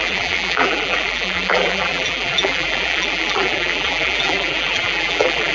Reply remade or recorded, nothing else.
remade